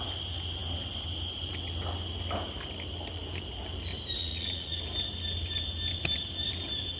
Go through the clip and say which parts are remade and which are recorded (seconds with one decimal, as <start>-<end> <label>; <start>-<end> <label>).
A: 0.0-4.2 recorded; 4.2-4.8 remade; 4.8-7.0 recorded